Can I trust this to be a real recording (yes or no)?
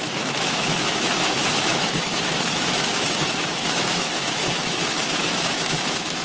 no